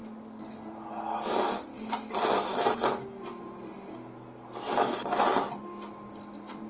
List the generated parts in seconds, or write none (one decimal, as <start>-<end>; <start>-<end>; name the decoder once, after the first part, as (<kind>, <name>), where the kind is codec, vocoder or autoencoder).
none